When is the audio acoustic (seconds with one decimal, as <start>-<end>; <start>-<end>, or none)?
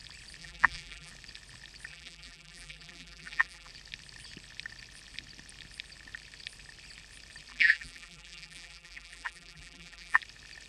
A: 0.0-0.4; 1.1-1.9; 3.7-7.5; 10.2-10.7